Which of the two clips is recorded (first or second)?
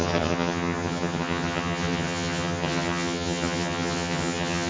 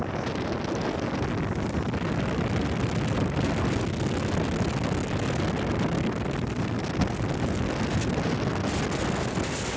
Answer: second